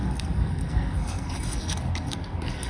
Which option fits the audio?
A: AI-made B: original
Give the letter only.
A